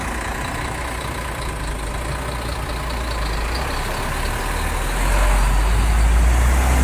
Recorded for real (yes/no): yes